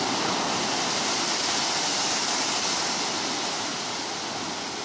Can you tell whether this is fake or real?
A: real